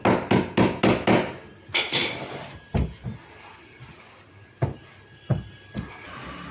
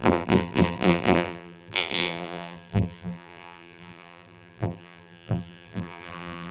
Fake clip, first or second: second